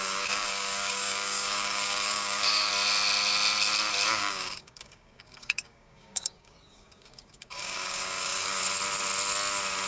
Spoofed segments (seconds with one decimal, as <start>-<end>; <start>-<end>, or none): 0.0-2.7; 4.1-8.6